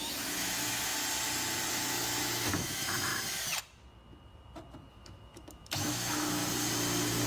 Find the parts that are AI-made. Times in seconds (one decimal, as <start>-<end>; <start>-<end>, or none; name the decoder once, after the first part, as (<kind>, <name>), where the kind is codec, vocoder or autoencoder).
0.0-0.9 (autoencoder, DAC-VAE); 1.7-3.1; 4.9-6.4